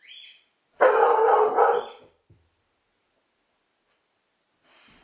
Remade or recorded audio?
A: recorded